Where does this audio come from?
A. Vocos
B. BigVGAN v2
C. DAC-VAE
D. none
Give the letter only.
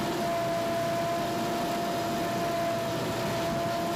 D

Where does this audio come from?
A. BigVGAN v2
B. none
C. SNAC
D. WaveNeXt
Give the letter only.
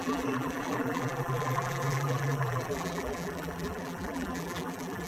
A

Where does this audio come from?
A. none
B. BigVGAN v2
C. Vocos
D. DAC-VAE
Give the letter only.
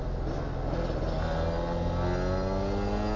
A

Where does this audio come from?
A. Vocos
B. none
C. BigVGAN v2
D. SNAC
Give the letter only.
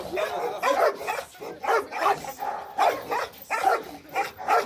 B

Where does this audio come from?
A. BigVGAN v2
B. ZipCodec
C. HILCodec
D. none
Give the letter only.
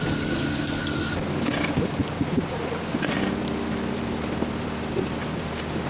A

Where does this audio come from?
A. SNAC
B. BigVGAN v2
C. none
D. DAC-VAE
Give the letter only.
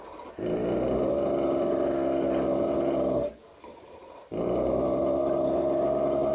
C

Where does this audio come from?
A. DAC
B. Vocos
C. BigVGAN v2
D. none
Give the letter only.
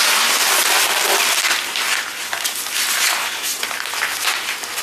D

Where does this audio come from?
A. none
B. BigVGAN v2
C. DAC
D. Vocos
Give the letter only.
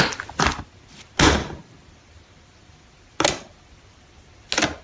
A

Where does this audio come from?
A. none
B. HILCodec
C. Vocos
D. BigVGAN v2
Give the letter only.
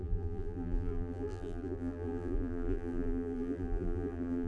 D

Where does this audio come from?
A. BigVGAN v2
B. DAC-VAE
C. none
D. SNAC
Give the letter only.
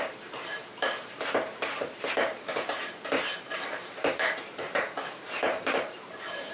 A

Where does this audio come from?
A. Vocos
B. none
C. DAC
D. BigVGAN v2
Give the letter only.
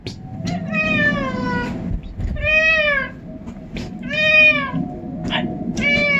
B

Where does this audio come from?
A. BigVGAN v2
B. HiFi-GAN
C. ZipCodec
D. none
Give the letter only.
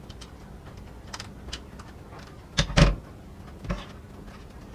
D